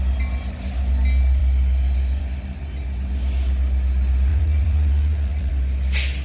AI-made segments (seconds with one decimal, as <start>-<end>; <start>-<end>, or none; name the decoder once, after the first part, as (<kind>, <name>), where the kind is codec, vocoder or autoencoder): 4.3-5.5 (vocoder, Vocos)